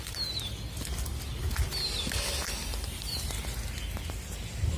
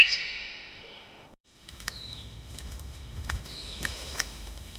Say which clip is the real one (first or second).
first